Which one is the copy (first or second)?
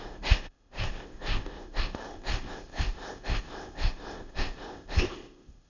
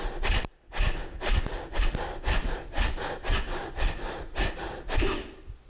first